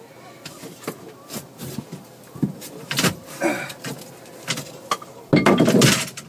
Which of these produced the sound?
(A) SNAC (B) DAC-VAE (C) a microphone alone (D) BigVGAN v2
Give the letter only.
C